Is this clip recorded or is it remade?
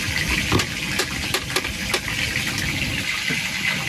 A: recorded